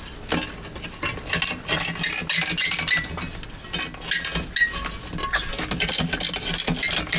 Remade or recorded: recorded